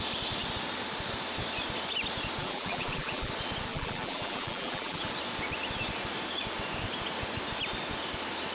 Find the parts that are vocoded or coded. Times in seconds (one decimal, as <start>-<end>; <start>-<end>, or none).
2.4-3.3; 3.7-5.1